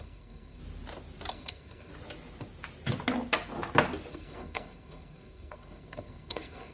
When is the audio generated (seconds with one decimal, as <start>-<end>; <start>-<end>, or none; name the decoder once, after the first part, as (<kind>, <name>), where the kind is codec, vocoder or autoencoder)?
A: 0.0-0.6 (codec, SNAC); 1.3-1.9; 4.1-6.7